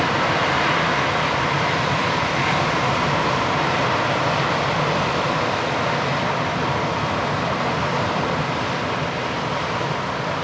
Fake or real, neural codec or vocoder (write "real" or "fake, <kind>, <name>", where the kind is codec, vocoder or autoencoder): real